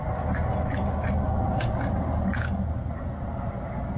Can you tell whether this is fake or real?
real